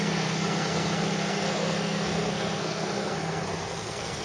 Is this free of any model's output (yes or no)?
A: no